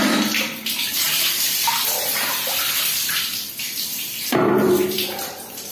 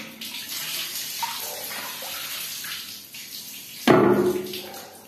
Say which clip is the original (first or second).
second